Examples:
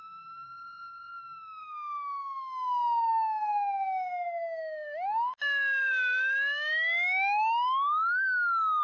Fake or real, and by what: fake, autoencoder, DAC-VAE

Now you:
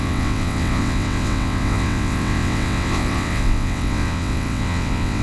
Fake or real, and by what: fake, vocoder, WaveNeXt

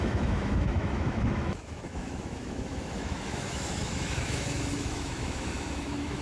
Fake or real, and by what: fake, autoencoder, DAC-VAE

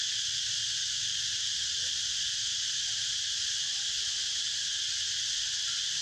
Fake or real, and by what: real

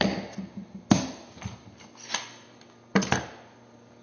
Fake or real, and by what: real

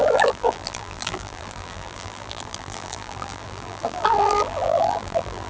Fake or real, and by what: fake, vocoder, BigVGAN v2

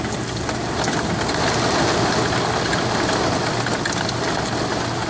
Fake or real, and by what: real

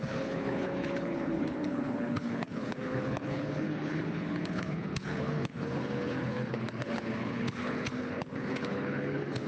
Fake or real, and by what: fake, codec, HILCodec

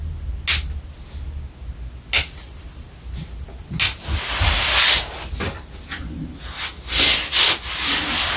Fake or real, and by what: real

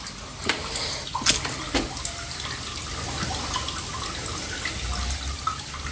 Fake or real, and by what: real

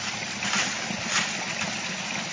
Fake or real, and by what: real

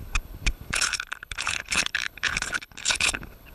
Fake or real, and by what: fake, codec, HILCodec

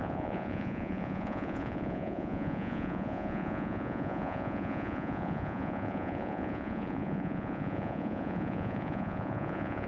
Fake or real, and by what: fake, vocoder, Vocos